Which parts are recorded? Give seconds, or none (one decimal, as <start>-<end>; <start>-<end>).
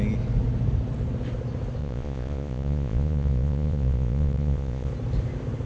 0.0-1.8; 4.9-5.7